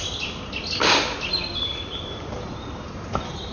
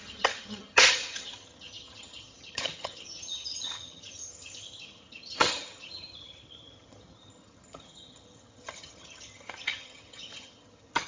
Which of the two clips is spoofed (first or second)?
second